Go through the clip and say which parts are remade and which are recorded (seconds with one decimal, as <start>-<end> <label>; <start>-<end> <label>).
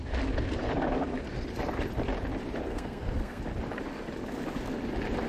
0.0-2.7 recorded; 2.7-3.4 remade; 3.4-5.3 recorded